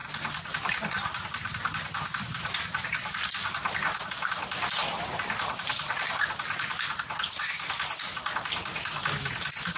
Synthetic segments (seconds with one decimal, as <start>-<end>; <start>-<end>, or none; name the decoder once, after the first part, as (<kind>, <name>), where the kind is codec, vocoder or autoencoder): 0.0-4.1 (vocoder, BigVGAN v2); 4.8-8.3